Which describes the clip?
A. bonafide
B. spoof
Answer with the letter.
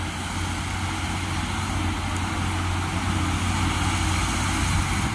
A